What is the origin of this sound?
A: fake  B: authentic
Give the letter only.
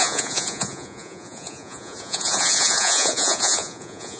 A